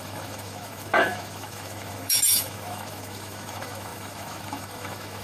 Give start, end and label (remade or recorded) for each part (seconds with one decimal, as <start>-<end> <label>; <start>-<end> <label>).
0.0-5.2 remade